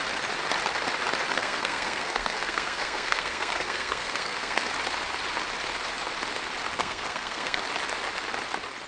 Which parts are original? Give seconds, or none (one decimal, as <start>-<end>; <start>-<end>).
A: 0.0-1.3; 4.7-6.8; 7.6-8.9